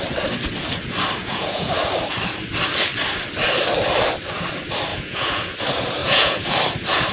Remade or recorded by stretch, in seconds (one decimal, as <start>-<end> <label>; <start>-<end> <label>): 0.0-1.2 recorded; 1.2-1.7 remade; 1.7-4.9 recorded; 4.9-5.4 remade; 5.4-6.0 recorded; 6.0-6.5 remade; 6.5-7.1 recorded